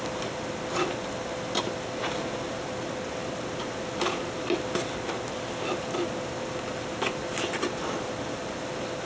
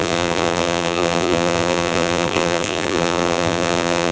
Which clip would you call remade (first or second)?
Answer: second